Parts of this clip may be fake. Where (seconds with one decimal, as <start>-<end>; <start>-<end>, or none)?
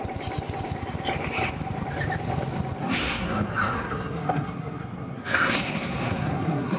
2.8-6.8